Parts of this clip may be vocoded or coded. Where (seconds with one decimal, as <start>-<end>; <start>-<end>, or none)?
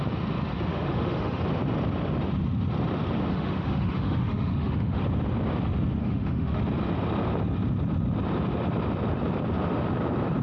0.7-1.4; 3.3-5.0; 6.0-6.6